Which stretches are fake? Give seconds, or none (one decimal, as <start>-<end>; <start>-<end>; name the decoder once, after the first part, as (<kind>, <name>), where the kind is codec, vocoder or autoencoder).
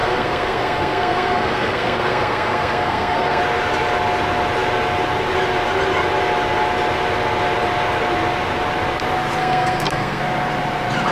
0.0-3.4 (codec, SNAC); 9.4-10.2